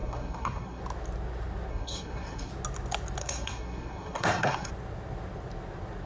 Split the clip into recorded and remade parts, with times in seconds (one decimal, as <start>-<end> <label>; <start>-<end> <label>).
0.0-0.8 remade; 0.8-1.7 recorded; 1.7-2.5 remade; 2.5-3.2 recorded; 3.2-4.7 remade; 4.7-6.1 recorded